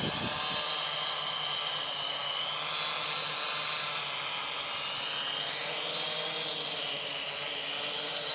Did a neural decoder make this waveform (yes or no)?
no